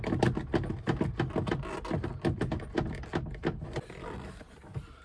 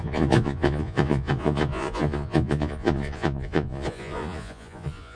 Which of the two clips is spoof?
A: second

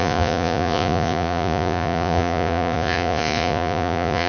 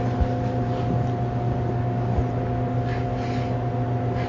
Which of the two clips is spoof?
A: first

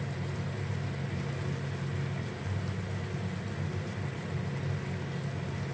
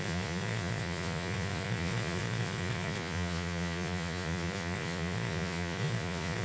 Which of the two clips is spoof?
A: second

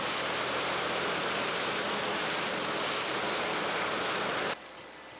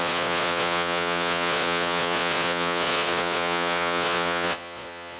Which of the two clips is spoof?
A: second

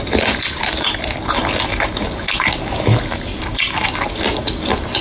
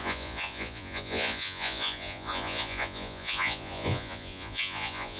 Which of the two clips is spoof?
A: second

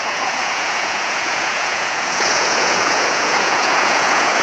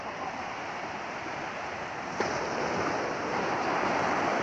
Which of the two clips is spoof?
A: first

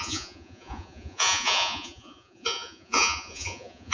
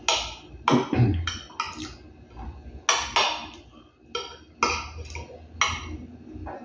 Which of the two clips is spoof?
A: first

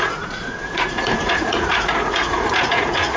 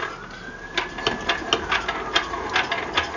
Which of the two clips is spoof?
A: first